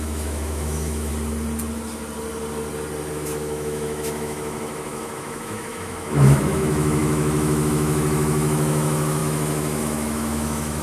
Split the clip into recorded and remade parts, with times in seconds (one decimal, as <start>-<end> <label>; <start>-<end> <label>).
0.0-1.1 remade; 1.1-3.1 recorded; 3.1-10.8 remade